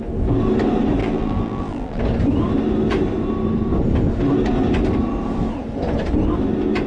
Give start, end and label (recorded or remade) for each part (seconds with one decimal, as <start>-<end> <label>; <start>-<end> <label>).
0.0-1.0 recorded; 1.0-2.0 remade; 2.0-6.9 recorded